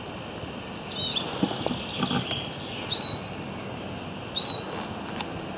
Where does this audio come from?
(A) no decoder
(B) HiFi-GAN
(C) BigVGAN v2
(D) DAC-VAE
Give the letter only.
A